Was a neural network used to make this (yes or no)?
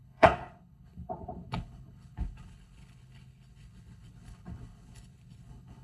yes